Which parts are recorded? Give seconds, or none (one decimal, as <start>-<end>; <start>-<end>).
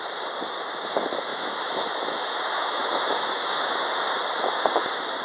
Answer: 0.0-1.3; 3.9-5.2